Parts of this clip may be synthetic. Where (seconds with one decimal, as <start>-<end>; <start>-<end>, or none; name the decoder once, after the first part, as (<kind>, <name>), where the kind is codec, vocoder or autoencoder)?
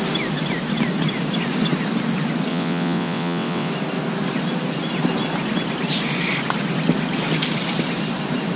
2.5-3.7 (vocoder, WaveNeXt)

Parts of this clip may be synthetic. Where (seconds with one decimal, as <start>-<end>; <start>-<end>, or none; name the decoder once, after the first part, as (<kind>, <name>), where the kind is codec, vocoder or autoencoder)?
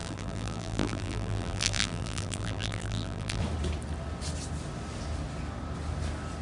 0.0-3.4 (vocoder, BigVGAN v2)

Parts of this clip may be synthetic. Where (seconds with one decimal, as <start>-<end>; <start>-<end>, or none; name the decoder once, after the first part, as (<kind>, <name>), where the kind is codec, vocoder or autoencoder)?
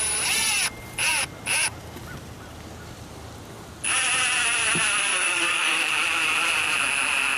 5.1-5.9 (codec, DAC)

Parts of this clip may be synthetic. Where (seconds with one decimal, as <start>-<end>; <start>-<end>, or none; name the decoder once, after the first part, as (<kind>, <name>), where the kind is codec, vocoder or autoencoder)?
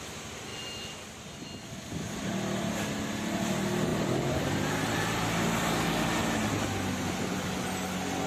3.9-5.8 (vocoder, BigVGAN v2)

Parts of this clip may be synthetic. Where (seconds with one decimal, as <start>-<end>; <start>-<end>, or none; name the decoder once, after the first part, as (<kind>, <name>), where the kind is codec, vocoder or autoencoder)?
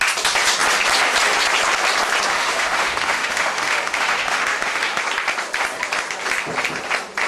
2.3-5.0 (autoencoder, DAC-VAE)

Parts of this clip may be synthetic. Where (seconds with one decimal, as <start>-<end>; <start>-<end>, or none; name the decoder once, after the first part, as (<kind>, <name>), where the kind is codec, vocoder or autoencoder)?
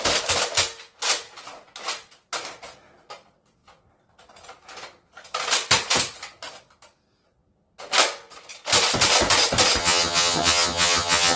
9.8-11.4 (vocoder, HiFi-GAN)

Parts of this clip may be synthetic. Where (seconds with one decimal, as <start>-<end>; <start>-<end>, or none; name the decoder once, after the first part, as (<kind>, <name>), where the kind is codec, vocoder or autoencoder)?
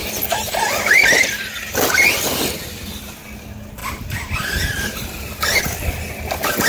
3.8-5.6 (vocoder, BigVGAN v2)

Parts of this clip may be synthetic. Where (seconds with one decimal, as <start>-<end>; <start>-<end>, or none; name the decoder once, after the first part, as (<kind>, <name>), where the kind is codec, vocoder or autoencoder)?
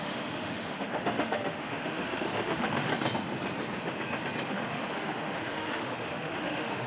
0.0-2.9 (autoencoder, DAC-VAE); 4.5-6.9